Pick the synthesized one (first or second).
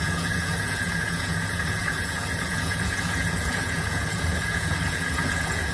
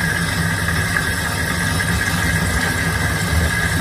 first